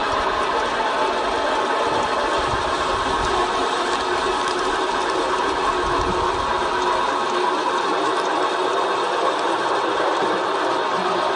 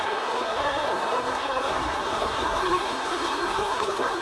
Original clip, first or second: first